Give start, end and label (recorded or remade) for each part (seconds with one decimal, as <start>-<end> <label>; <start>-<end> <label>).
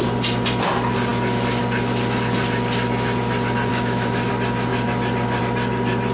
0.0-3.7 recorded; 3.7-4.3 remade; 4.3-6.1 recorded